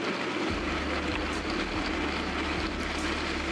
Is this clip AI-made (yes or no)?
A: no